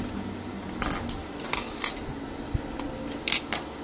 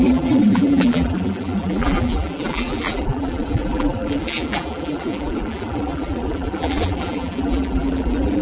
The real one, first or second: first